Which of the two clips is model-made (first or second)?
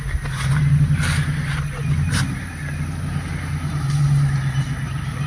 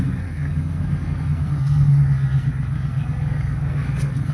second